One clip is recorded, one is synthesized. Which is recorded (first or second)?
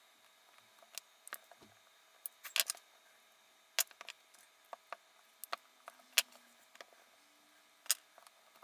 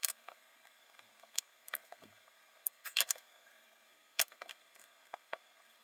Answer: first